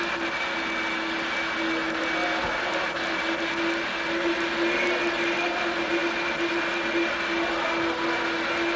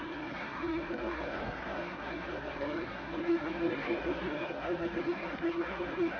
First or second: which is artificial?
second